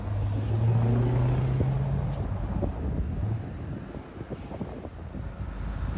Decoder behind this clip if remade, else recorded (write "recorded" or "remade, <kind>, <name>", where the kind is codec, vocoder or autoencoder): recorded